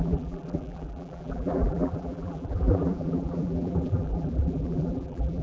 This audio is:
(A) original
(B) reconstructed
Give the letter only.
B